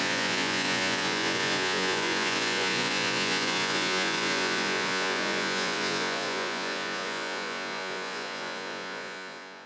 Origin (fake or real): fake